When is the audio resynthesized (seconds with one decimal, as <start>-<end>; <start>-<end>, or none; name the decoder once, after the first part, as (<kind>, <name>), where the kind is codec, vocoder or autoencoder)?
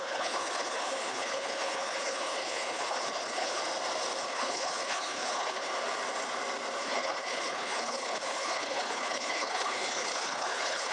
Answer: 0.0-3.6 (codec, HILCodec); 4.2-5.7; 6.8-10.9